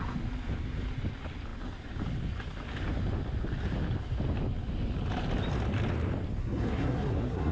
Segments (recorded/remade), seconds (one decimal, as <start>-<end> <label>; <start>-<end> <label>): 0.0-6.4 recorded; 6.4-7.5 remade